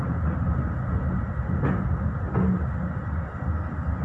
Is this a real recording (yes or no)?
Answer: yes